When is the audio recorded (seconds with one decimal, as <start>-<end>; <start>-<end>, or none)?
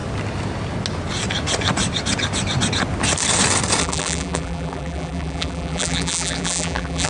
0.0-3.8